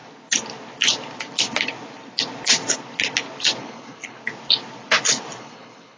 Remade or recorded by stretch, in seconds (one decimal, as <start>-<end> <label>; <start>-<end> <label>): 0.0-3.6 recorded; 3.6-4.2 remade; 4.2-5.4 recorded; 5.4-6.0 remade